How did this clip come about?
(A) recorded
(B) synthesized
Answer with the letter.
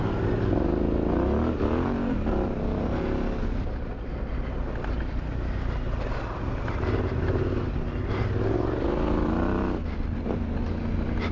A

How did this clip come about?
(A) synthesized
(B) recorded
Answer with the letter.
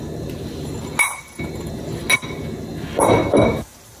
B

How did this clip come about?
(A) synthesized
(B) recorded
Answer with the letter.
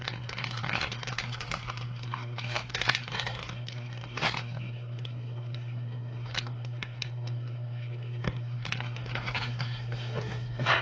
A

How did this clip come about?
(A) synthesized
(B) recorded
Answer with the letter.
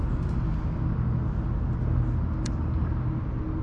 B